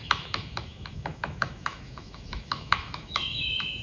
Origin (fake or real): fake